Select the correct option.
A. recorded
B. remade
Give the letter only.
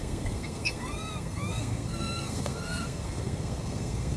B